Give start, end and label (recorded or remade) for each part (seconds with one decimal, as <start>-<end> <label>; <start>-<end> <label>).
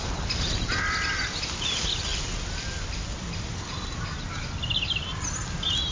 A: 0.0-2.1 recorded; 2.1-4.0 remade; 4.0-5.9 recorded